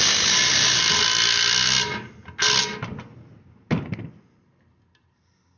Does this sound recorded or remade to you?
recorded